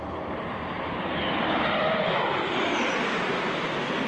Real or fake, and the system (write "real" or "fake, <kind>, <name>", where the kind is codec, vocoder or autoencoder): fake, vocoder, BigVGAN v2